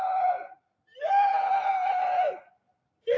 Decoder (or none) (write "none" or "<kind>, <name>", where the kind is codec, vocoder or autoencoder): none